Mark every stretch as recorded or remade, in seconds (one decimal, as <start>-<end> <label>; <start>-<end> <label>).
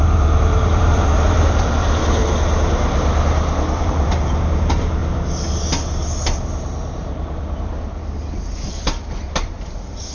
0.0-2.2 remade; 2.2-3.8 recorded; 3.8-5.0 remade; 5.0-9.5 recorded; 9.5-10.1 remade